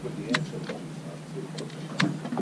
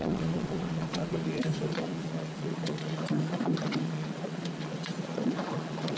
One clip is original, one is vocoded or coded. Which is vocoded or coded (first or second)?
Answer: second